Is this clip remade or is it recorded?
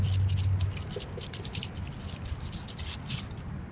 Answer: recorded